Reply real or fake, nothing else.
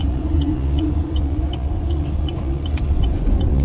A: fake